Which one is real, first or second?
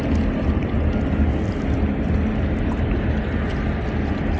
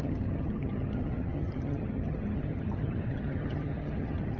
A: first